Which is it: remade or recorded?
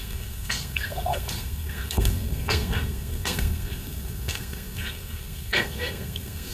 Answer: remade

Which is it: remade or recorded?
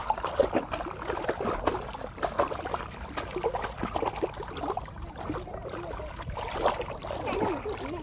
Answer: recorded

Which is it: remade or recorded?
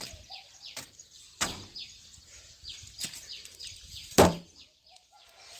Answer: remade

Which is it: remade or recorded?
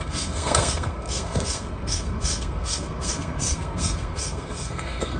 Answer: remade